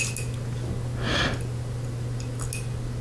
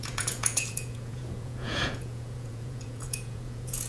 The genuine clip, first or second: first